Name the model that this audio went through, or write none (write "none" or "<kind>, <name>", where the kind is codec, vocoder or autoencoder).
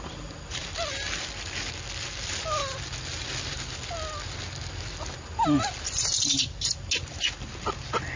none